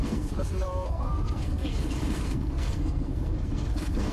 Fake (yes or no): yes